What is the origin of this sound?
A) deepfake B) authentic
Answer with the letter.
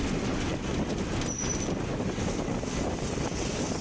B